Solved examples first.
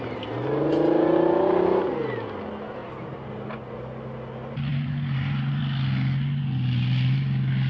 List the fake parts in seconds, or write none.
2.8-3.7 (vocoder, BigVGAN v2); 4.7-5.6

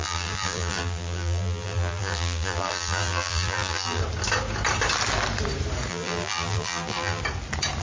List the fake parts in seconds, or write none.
0.0-4.0 (vocoder, BigVGAN v2); 5.9-7.2

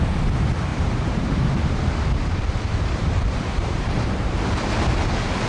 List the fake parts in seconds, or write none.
0.7-1.7 (vocoder, BigVGAN v2); 3.0-4.5